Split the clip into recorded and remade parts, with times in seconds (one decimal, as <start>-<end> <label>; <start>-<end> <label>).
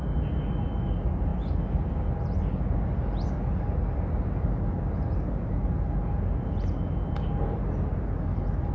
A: 0.0-8.7 recorded